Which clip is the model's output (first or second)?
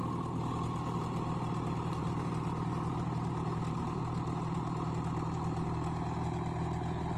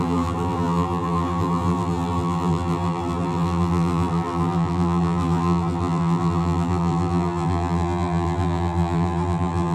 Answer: second